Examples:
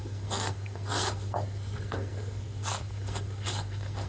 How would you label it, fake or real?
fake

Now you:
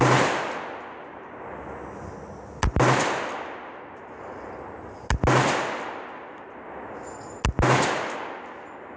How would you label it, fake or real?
real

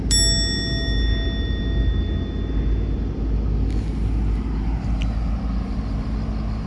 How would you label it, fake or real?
real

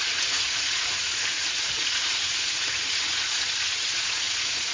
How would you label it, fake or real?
fake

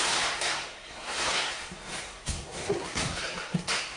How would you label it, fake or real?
fake